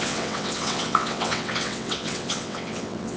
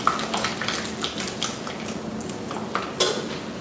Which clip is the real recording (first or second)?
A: second